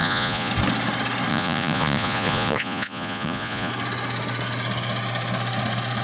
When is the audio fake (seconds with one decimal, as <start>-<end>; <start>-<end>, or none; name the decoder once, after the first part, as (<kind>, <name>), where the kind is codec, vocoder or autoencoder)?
0.0-0.5 (vocoder, Vocos); 1.3-3.7